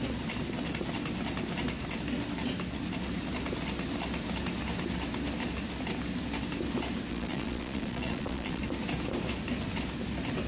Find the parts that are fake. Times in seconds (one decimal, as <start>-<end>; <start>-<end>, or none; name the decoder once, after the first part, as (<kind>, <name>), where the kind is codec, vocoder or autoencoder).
7.1-8.6 (vocoder, Vocos)